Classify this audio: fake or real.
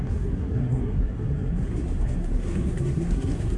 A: fake